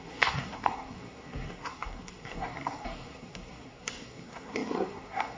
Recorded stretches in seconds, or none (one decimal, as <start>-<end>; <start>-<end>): none